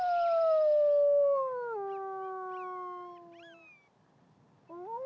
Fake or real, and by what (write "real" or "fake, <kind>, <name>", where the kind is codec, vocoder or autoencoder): real